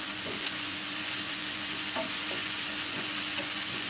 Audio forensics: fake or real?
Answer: fake